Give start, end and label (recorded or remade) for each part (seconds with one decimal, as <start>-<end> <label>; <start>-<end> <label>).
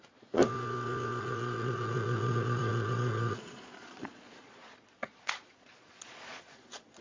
0.0-0.4 remade; 0.4-1.2 recorded; 1.2-7.0 remade